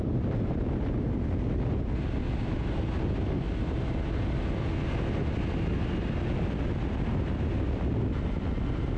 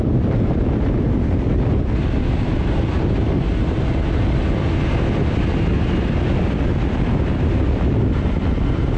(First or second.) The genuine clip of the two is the first